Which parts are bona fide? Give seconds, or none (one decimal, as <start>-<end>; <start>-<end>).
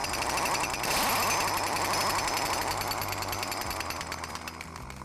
0.0-5.0